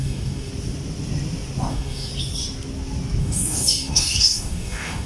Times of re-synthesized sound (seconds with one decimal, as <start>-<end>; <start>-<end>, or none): 0.0-0.5; 1.7-2.1; 3.2-5.1